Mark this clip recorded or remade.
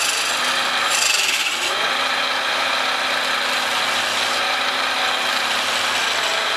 recorded